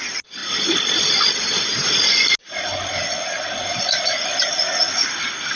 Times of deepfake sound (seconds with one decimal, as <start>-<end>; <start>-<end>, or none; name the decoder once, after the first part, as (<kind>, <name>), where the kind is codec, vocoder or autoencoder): none